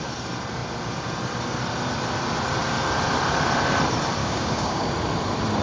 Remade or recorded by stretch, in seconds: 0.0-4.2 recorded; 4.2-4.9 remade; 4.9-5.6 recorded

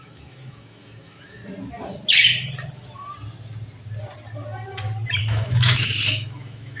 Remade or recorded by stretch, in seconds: 0.0-1.4 remade; 1.4-5.2 recorded; 5.2-6.8 remade

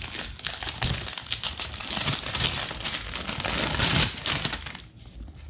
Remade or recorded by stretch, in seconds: 0.0-5.5 recorded

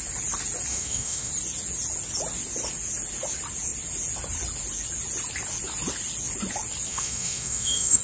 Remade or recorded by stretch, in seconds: 0.0-0.7 recorded; 0.7-1.3 remade; 1.3-6.9 recorded; 6.9-8.0 remade

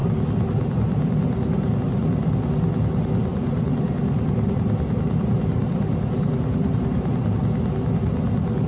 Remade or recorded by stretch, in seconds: 0.0-3.3 recorded; 3.3-7.4 remade; 7.4-8.7 recorded

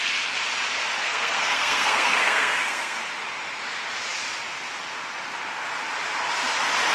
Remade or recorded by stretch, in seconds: 0.0-1.0 recorded; 1.0-3.0 remade; 3.0-6.9 recorded

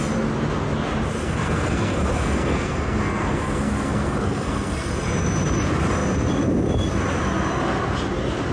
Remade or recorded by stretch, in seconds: 0.0-1.2 recorded; 1.2-4.9 remade; 4.9-8.5 recorded